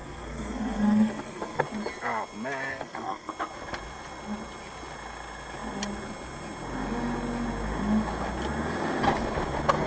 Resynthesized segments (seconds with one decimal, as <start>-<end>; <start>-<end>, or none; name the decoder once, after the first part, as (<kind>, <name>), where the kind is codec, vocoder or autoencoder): 0.0-1.6 (codec, SNAC); 2.7-3.3